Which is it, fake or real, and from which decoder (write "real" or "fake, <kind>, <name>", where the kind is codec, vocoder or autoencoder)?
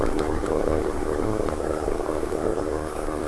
fake, codec, SNAC